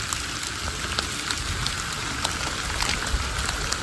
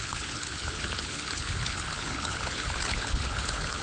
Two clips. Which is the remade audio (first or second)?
second